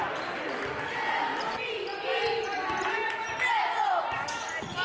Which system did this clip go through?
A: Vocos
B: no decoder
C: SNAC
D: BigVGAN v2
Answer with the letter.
B